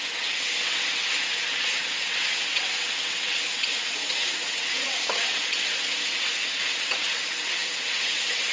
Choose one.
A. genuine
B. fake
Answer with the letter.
B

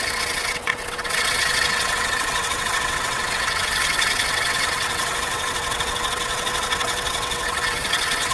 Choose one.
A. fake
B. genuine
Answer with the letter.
A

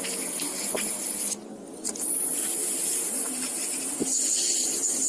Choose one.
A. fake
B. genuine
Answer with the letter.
B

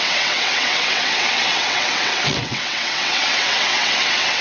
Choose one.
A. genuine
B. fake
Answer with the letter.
B